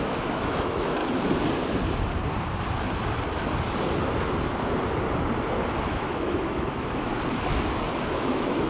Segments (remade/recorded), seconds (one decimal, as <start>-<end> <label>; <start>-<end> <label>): 0.0-1.0 remade; 1.0-5.9 recorded; 5.9-7.1 remade; 7.1-8.0 recorded; 8.0-8.7 remade